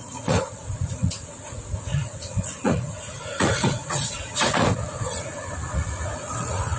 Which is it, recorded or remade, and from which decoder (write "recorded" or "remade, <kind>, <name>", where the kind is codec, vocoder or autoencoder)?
remade, vocoder, Vocos